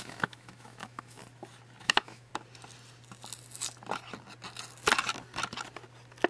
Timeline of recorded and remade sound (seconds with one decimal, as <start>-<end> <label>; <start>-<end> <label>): 0.0-1.2 remade; 1.2-1.8 recorded; 1.8-2.3 remade; 2.3-6.3 recorded